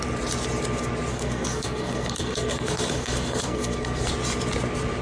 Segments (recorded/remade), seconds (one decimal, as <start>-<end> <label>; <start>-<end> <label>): 0.0-1.1 recorded; 1.1-4.1 remade; 4.1-5.0 recorded